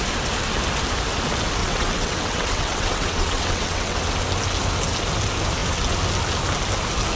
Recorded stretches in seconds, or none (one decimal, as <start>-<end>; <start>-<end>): 0.0-1.6; 4.0-7.2